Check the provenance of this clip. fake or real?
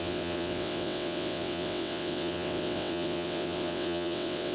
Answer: fake